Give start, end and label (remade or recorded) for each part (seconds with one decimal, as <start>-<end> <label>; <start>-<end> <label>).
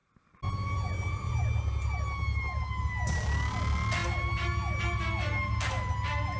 0.0-6.4 recorded